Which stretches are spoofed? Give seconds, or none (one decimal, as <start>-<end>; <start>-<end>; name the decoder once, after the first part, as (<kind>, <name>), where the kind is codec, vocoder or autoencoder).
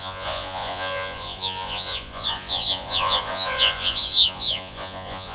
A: 0.0-5.3 (vocoder, Vocos)